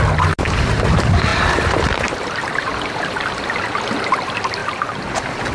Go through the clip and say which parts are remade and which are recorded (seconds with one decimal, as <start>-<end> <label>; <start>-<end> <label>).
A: 0.0-5.5 recorded

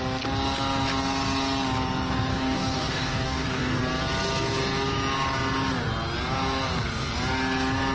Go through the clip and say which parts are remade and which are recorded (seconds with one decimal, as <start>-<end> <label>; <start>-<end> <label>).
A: 0.0-2.3 recorded; 2.3-3.8 remade; 3.8-7.9 recorded

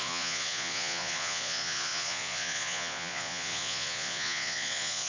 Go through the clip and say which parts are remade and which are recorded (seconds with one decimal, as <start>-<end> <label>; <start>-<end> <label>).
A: 0.0-5.1 remade

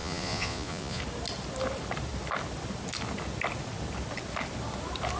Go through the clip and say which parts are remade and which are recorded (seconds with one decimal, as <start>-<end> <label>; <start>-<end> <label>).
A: 0.0-1.0 remade; 1.0-5.2 recorded